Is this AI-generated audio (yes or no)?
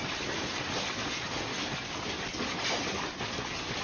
no